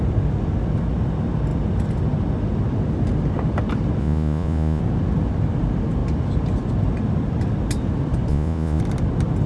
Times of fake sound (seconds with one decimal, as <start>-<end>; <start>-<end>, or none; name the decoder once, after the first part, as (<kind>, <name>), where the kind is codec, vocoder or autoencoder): 4.0-4.8 (vocoder, Vocos); 8.3-8.8